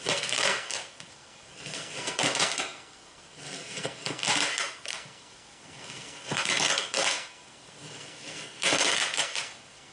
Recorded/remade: remade